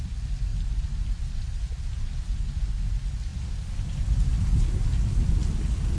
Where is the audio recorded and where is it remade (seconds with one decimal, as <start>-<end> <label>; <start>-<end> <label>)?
0.0-6.0 recorded